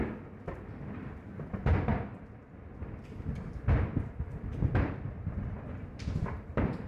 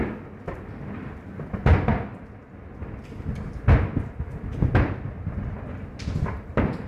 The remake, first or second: first